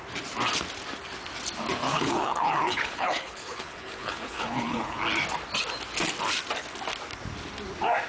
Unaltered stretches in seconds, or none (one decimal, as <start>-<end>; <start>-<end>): 0.0-1.9; 5.0-8.1